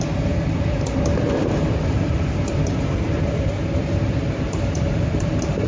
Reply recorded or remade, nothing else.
remade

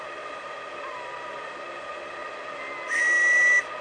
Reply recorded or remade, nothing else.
recorded